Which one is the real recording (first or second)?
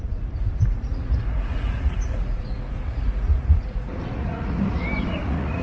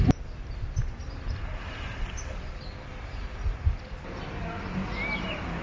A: second